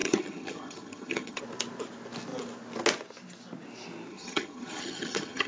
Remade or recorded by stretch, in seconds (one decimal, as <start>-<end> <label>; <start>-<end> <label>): 0.0-1.4 remade; 1.4-4.1 recorded; 4.1-5.5 remade